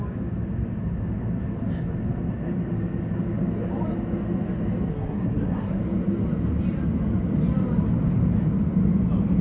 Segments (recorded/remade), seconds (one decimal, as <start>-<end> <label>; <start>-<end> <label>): 0.0-4.9 recorded; 4.9-5.8 remade; 5.8-9.4 recorded